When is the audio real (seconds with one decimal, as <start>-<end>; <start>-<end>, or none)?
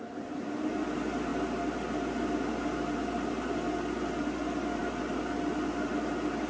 0.0-6.5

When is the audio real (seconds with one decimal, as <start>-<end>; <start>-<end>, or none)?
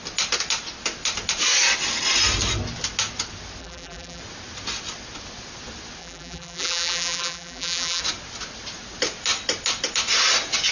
0.0-3.6; 4.2-6.0; 8.0-10.7